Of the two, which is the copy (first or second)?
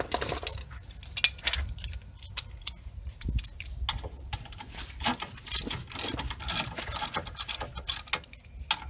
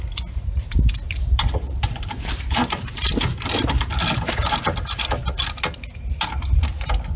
second